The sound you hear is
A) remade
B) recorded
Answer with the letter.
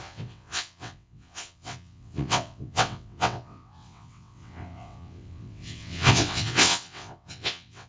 A